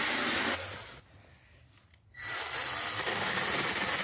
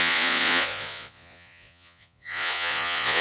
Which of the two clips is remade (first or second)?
second